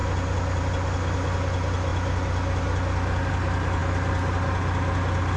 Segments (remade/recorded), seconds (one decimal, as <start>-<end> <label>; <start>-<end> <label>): 0.0-5.4 recorded